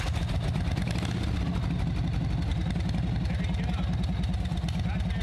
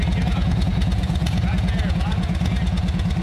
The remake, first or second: second